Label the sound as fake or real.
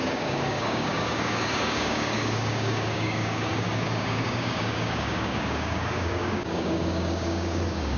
fake